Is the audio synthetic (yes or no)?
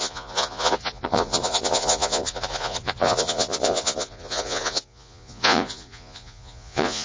yes